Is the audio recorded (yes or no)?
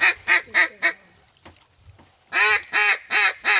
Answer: yes